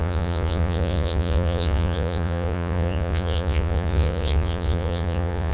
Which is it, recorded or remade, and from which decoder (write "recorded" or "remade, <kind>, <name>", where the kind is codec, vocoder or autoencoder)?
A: remade, vocoder, Vocos